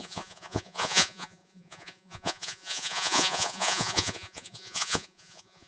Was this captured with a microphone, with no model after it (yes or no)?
no